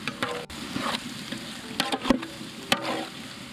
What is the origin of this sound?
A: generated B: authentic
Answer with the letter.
B